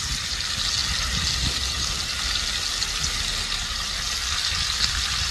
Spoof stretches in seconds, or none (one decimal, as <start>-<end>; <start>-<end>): none